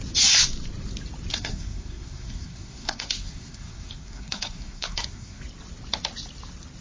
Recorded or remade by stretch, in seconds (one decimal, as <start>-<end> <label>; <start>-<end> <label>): 0.0-1.3 recorded; 1.3-5.4 remade; 5.4-6.8 recorded